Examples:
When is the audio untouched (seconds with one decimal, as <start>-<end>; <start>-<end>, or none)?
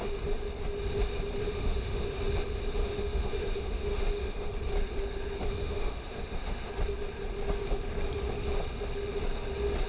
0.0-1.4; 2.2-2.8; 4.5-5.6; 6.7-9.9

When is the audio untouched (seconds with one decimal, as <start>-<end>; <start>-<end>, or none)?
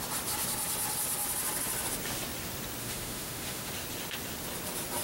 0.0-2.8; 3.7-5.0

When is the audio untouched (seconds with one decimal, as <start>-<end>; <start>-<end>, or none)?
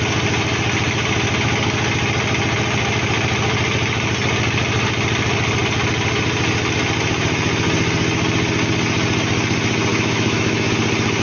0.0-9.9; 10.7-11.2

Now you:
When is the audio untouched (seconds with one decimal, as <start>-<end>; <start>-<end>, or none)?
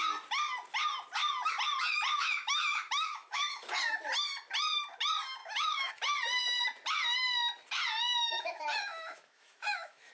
0.0-2.1; 3.7-5.4; 5.9-8.2